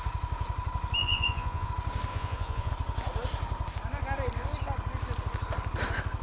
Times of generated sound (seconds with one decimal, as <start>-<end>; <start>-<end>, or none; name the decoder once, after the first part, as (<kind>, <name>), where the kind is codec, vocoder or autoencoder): 1.0-1.7 (vocoder, Vocos); 2.1-2.7